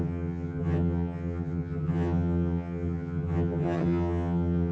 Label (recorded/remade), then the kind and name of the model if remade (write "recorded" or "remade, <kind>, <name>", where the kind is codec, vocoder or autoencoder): remade, vocoder, HiFi-GAN